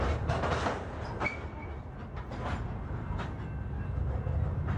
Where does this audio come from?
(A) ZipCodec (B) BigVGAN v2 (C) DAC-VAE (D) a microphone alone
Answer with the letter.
D